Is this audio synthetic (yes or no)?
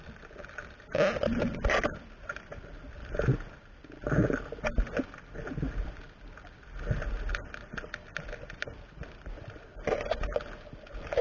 no